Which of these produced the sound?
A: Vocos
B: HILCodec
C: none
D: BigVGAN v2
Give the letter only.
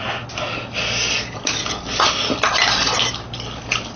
C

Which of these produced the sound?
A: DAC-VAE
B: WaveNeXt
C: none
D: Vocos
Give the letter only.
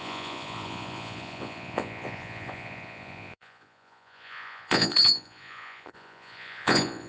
D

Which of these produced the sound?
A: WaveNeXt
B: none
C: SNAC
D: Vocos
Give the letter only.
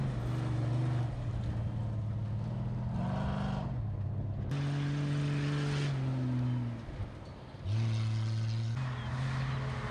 B